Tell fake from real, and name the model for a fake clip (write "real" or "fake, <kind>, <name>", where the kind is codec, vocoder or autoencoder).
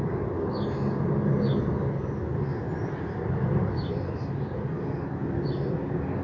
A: real